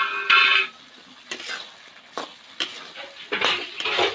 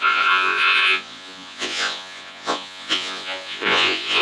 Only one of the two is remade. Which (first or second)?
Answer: second